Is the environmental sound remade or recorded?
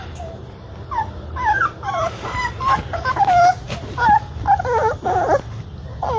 recorded